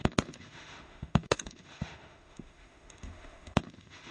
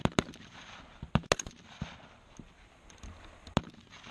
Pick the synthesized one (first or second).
first